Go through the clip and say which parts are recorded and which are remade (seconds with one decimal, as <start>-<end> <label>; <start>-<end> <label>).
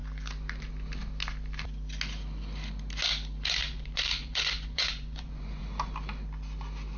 0.0-3.6 recorded; 3.6-5.6 remade; 5.6-7.0 recorded